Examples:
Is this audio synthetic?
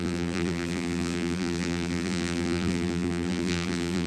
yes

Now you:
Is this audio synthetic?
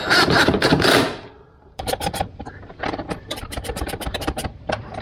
yes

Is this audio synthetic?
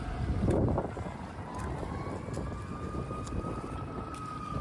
no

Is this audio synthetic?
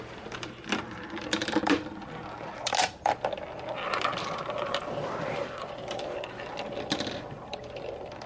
yes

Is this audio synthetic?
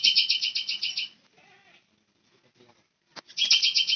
no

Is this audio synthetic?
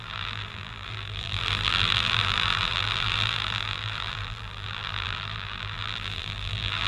yes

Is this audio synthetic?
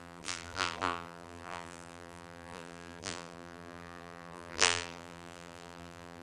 yes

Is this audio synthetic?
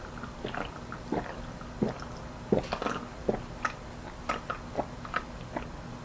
no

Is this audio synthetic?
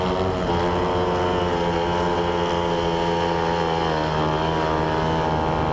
no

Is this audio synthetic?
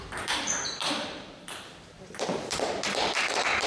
yes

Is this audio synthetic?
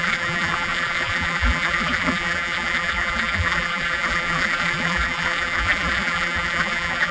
yes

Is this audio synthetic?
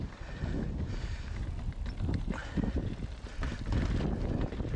no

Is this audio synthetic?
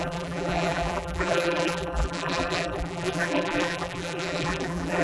yes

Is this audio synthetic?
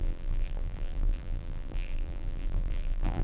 yes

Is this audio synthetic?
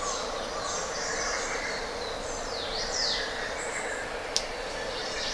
yes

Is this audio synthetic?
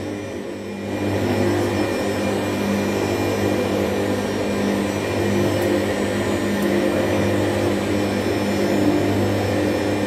no